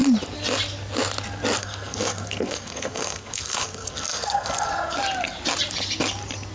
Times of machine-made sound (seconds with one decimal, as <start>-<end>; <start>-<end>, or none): 1.6-4.7